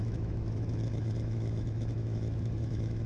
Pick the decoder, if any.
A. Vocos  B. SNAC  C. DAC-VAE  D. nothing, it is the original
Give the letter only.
C